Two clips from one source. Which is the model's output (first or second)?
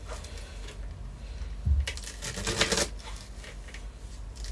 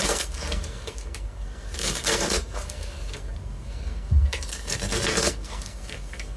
second